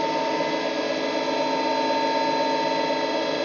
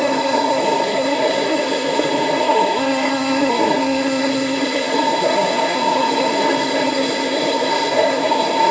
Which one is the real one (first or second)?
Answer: first